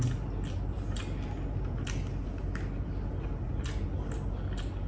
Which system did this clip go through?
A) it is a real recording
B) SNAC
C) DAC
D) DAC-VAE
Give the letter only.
A